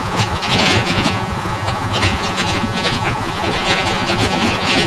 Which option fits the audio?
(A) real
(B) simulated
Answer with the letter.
B